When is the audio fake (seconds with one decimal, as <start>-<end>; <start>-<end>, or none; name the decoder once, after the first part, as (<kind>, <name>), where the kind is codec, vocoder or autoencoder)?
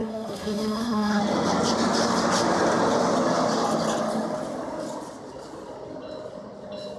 0.0-1.2 (codec, SNAC)